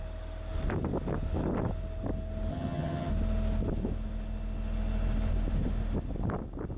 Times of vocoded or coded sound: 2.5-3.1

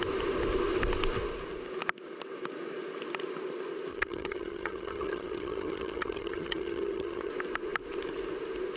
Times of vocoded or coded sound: 3.9-7.3

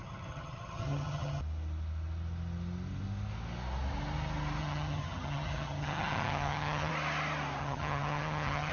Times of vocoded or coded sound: 0.0-1.4; 4.6-6.9; 7.6-8.7